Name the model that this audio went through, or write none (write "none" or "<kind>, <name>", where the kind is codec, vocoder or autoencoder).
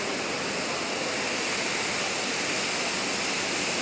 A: none